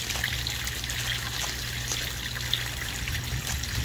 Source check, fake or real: real